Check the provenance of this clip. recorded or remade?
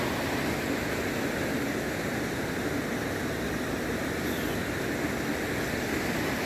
recorded